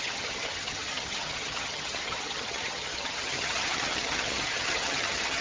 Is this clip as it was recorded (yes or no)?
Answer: no